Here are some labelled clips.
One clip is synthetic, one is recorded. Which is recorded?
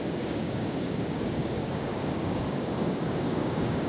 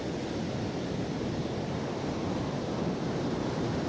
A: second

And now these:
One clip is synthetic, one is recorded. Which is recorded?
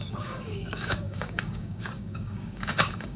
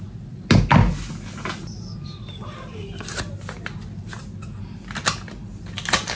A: second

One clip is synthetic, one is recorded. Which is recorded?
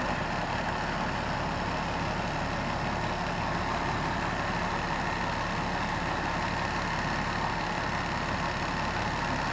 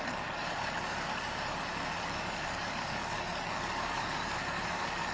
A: first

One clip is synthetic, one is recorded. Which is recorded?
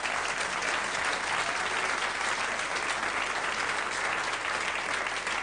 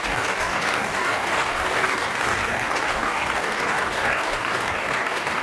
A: first